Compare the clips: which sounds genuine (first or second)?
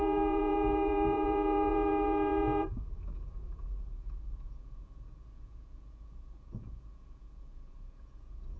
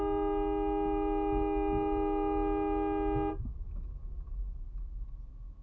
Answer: second